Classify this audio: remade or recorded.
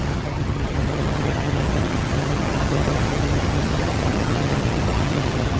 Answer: remade